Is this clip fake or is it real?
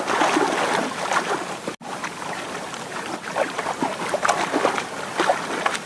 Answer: real